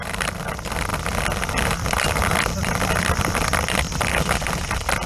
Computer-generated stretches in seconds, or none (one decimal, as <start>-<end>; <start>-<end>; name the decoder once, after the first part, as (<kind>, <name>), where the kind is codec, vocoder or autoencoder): none